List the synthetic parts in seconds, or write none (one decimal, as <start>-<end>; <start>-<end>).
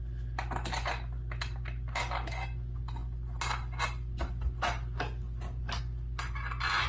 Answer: none